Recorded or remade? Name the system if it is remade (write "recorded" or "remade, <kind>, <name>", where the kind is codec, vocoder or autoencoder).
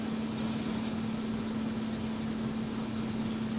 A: recorded